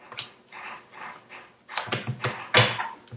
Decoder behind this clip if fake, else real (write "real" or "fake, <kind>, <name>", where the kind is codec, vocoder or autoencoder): real